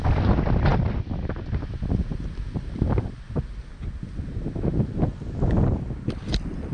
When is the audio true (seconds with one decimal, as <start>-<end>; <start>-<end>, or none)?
0.0-6.7